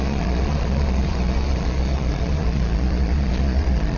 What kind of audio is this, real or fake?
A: fake